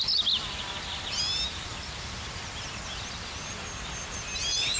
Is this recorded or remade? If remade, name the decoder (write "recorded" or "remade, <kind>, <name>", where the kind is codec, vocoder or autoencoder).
remade, vocoder, BigVGAN v2